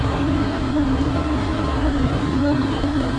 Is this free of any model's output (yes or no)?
no